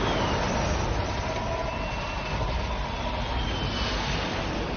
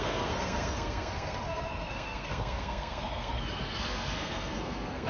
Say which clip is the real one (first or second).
first